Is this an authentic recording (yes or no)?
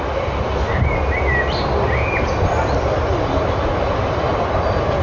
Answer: yes